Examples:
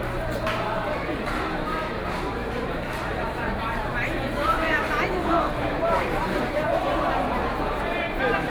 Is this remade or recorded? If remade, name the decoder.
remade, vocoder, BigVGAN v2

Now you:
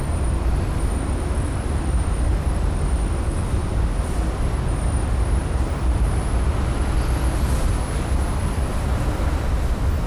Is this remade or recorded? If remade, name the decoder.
remade, vocoder, BigVGAN v2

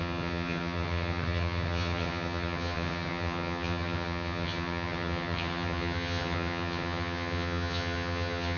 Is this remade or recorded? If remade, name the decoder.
remade, vocoder, HiFi-GAN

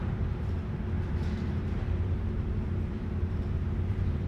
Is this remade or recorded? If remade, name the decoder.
remade, vocoder, BigVGAN v2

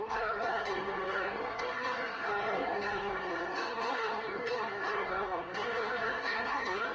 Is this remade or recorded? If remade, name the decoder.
remade, codec, SNAC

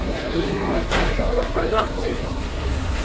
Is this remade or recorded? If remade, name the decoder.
remade, codec, SNAC